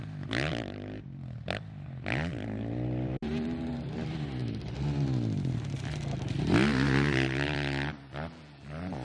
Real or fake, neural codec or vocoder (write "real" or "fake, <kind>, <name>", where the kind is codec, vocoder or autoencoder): real